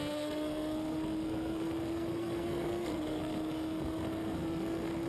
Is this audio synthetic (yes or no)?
yes